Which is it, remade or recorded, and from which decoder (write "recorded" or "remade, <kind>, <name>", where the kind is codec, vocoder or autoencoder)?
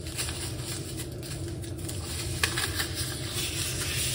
recorded